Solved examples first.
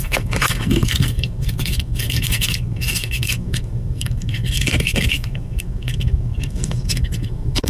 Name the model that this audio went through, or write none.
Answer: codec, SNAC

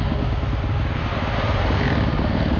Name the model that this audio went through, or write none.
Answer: none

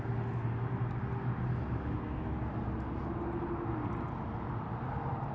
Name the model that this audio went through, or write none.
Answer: none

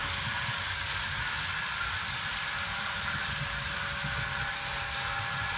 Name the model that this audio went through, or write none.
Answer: none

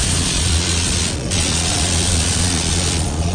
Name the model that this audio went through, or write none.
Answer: vocoder, Vocos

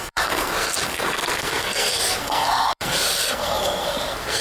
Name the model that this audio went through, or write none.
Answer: codec, SNAC